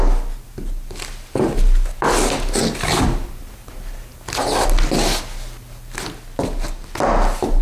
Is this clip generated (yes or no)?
no